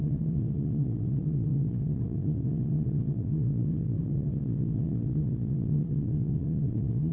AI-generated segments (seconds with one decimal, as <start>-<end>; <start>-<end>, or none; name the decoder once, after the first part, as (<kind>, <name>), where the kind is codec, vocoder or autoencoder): 0.0-7.1 (vocoder, Vocos)